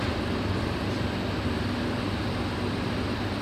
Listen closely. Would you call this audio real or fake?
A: real